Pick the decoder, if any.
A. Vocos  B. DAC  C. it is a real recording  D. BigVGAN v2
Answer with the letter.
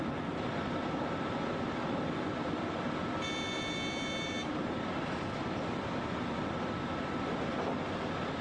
D